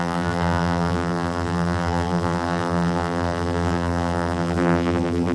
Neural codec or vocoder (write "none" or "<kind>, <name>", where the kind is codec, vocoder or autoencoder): vocoder, BigVGAN v2